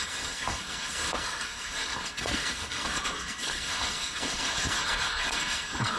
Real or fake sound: fake